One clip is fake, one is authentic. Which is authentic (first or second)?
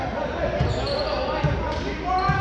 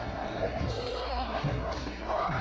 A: first